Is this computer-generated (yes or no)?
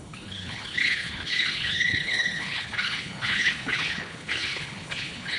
yes